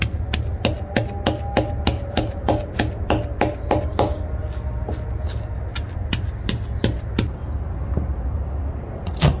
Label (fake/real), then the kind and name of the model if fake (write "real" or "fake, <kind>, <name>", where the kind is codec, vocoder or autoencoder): real